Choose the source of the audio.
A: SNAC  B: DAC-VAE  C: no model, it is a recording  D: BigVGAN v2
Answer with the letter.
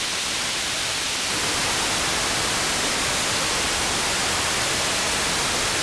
C